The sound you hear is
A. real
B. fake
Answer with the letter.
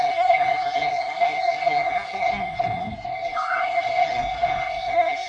B